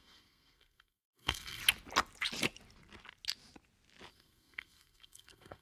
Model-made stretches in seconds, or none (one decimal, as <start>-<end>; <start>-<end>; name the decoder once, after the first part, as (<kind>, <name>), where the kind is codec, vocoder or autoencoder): 0.0-1.6 (codec, SNAC); 4.1-5.6